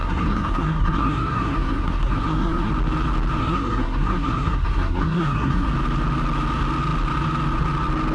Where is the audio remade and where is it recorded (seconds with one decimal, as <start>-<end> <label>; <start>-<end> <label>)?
0.0-2.7 remade; 2.7-3.4 recorded; 3.4-5.7 remade; 5.7-8.1 recorded